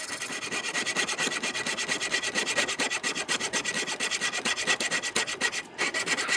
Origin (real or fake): real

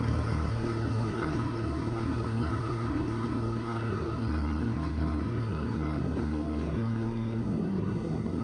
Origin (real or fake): fake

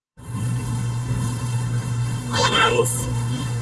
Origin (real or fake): fake